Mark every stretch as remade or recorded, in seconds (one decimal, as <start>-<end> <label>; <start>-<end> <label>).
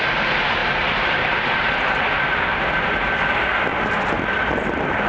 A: 0.0-0.6 recorded; 0.6-1.7 remade; 1.7-3.7 recorded; 3.7-4.3 remade; 4.3-5.1 recorded